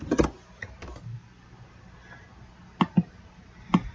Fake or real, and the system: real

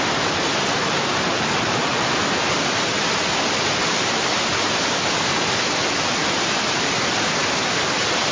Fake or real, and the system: fake, vocoder, BigVGAN v2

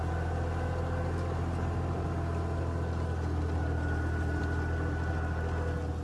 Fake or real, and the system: real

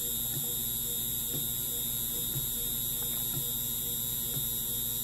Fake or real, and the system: real